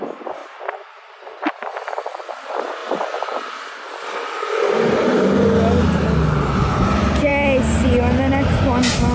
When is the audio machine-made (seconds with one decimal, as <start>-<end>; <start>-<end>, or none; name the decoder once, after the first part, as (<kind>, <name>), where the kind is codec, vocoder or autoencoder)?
none

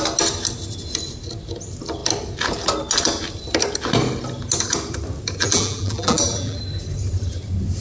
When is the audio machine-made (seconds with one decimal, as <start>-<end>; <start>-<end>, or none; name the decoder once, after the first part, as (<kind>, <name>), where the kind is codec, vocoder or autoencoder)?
5.4-6.6 (vocoder, BigVGAN v2)

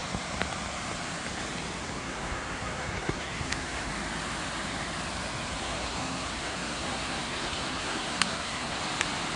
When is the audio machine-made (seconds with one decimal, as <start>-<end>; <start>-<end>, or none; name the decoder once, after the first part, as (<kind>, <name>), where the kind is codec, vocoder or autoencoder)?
2.0-3.9 (codec, SNAC); 5.6-8.8